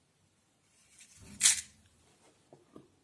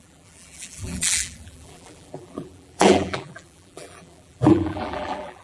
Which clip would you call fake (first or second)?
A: second